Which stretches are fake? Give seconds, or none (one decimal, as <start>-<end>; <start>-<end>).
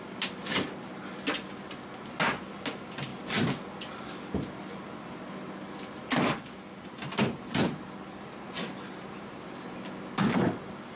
none